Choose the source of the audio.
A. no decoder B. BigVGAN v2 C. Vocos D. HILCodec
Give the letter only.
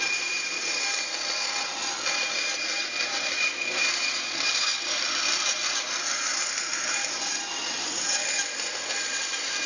B